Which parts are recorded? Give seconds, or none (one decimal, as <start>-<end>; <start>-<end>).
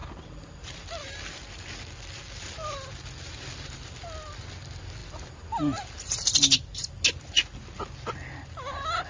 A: 0.0-9.1